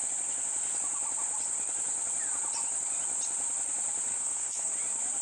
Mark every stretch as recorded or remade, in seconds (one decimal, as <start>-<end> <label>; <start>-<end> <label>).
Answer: 0.0-4.1 recorded; 4.1-4.7 remade; 4.7-5.2 recorded